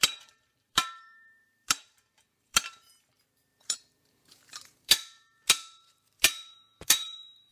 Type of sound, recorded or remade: remade